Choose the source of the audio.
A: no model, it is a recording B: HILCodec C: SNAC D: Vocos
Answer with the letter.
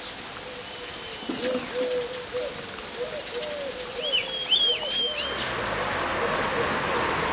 A